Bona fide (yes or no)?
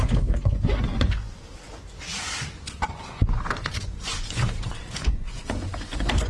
no